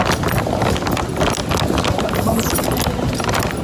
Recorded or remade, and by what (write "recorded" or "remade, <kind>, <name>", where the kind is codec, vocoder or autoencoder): recorded